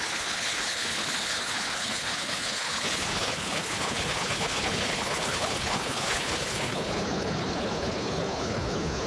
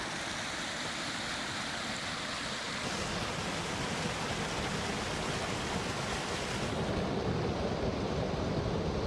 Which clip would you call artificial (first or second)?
first